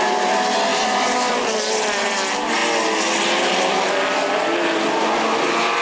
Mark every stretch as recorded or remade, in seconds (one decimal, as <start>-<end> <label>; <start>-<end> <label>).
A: 0.0-2.6 remade; 2.6-3.9 recorded; 3.9-5.8 remade

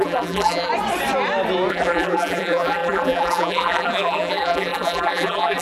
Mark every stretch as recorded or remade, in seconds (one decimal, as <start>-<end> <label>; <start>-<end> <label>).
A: 0.0-0.7 remade; 0.7-1.7 recorded; 1.7-5.6 remade

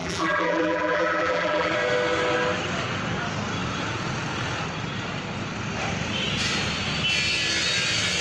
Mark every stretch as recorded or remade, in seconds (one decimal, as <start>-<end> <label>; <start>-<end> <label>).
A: 0.0-1.7 remade; 1.7-8.2 recorded

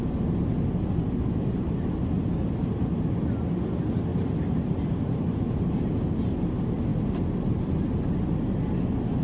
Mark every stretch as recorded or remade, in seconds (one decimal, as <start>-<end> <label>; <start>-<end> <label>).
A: 0.0-4.1 recorded; 4.1-5.2 remade; 5.2-6.9 recorded; 6.9-7.9 remade; 7.9-9.2 recorded

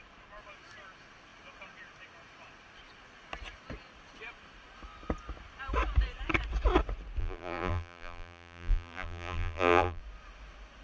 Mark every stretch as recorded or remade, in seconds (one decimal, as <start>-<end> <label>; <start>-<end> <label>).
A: 0.0-7.2 recorded; 7.2-10.0 remade; 10.0-10.8 recorded

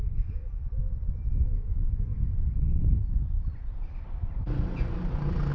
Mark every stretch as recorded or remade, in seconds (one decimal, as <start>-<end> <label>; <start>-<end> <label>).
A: 0.0-2.1 recorded; 2.1-5.5 remade